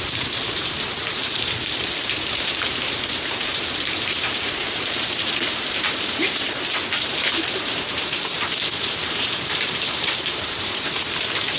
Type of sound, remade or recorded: remade